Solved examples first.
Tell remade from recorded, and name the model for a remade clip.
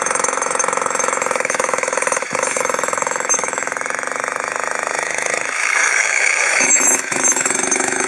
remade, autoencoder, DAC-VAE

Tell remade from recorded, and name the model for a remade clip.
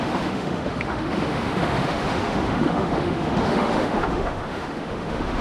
remade, autoencoder, DAC-VAE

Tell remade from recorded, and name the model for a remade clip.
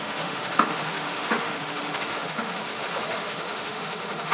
remade, autoencoder, DAC-VAE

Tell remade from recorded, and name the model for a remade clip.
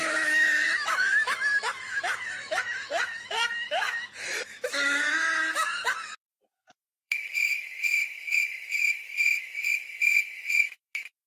remade, autoencoder, DAC-VAE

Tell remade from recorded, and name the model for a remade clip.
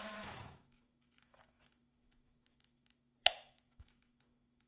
remade, autoencoder, DAC-VAE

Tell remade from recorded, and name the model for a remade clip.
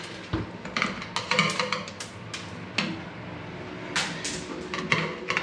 recorded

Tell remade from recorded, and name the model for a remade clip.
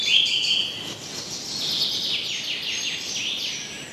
recorded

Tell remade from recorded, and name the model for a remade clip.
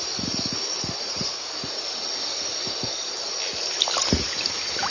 recorded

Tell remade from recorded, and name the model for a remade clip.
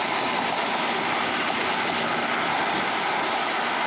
recorded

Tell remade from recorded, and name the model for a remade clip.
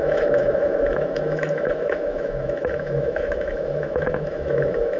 remade, autoencoder, DAC-VAE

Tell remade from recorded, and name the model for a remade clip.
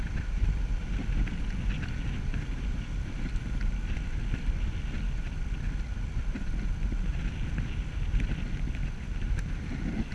recorded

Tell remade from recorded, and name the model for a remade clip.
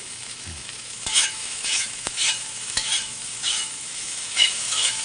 remade, autoencoder, DAC-VAE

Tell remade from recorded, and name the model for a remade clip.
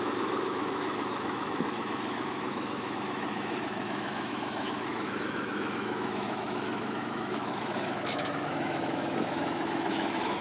remade, autoencoder, DAC-VAE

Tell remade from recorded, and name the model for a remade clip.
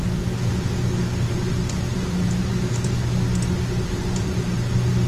recorded